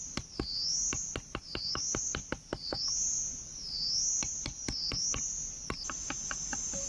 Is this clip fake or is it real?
real